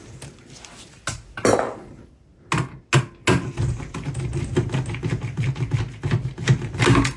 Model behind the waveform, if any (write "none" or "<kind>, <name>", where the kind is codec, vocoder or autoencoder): none